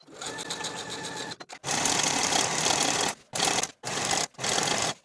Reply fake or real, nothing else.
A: real